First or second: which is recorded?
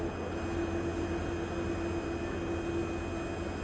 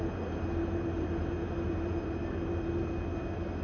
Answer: first